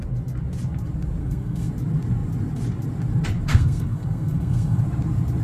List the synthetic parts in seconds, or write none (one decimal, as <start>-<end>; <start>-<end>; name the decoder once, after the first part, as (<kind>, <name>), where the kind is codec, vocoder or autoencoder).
1.2-1.7 (codec, SNAC); 3.5-4.8